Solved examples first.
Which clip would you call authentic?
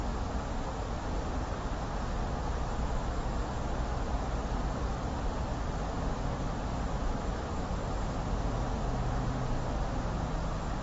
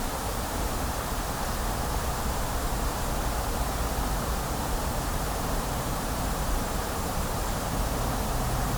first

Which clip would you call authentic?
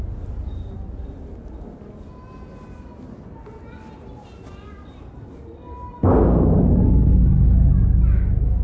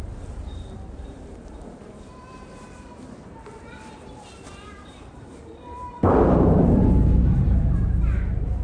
first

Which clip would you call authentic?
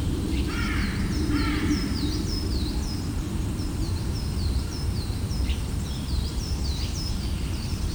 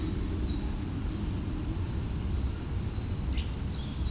second